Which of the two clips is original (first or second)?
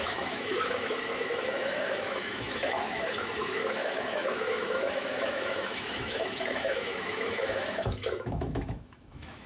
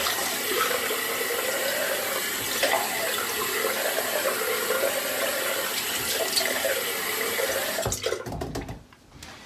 second